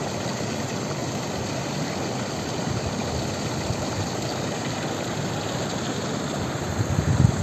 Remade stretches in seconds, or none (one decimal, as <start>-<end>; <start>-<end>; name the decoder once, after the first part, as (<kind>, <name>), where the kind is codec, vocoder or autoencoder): none